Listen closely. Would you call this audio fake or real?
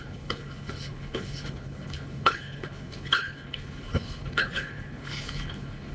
fake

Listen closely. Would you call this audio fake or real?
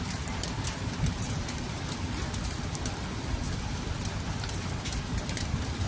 real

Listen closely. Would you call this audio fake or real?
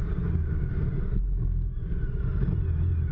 real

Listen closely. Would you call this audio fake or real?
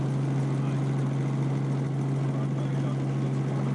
real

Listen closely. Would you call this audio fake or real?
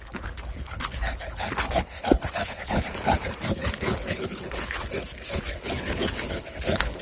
fake